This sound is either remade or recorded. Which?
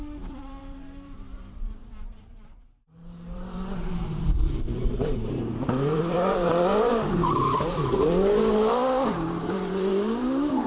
remade